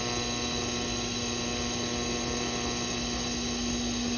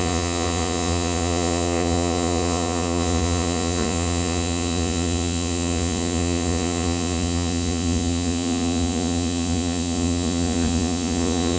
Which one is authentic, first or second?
first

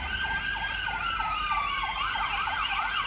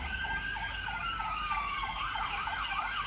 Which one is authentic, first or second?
first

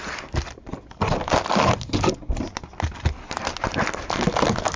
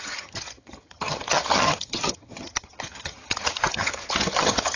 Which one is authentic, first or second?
first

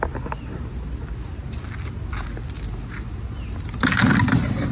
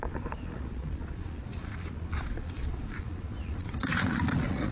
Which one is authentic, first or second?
first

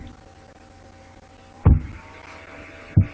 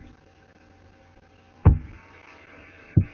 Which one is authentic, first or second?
first